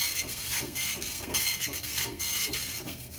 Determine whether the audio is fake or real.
fake